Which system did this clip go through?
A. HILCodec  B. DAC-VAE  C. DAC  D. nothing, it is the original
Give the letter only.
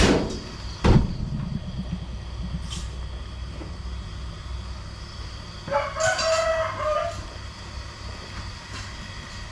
D